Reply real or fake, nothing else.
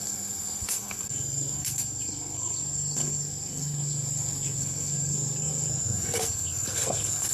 fake